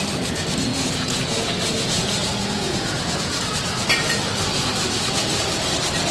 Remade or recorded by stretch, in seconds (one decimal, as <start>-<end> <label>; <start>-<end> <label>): 0.0-0.7 recorded; 0.7-3.4 remade; 3.4-6.1 recorded